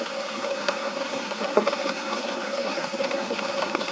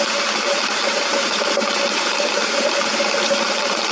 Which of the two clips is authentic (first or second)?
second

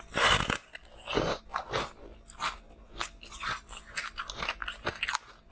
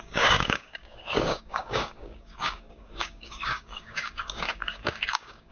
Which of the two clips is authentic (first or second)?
first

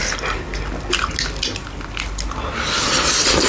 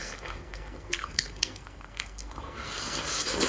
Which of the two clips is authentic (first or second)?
first